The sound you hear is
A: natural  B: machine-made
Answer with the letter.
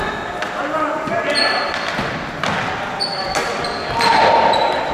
A